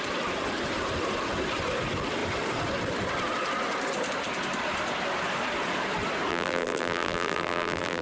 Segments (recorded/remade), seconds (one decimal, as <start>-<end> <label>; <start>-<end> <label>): 0.0-6.3 recorded; 6.3-8.0 remade